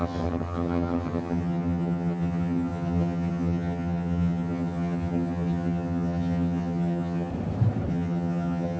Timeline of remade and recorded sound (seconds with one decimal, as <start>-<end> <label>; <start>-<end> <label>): 0.0-7.3 remade; 7.3-7.9 recorded; 7.9-8.8 remade